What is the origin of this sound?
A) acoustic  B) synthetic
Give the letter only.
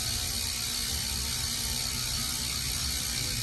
A